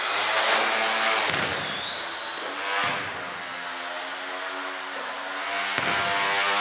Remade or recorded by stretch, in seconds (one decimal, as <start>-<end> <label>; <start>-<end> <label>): 0.0-6.6 recorded